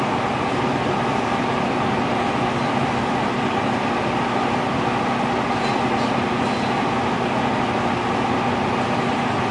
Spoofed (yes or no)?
no